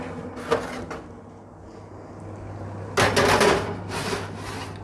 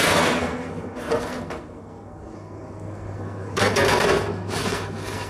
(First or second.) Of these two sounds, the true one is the first